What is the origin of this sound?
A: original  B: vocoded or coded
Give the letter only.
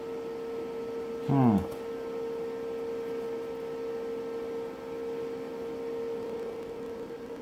A